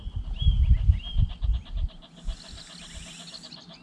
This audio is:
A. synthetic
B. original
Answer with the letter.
B